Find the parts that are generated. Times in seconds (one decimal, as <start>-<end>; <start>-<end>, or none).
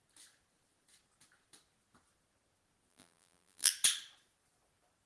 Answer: 2.9-3.7